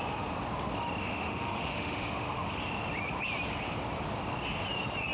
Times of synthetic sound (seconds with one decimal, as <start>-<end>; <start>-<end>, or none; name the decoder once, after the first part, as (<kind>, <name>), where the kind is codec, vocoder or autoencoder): 1.0-2.5 (autoencoder, DAC-VAE)